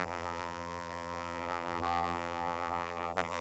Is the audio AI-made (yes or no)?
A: yes